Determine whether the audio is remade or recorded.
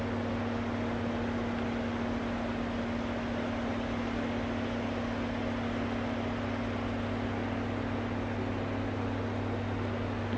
recorded